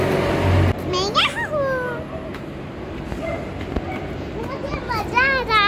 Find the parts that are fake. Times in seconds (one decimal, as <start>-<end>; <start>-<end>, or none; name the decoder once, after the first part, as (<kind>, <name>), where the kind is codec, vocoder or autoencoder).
2.3-4.8 (vocoder, BigVGAN v2)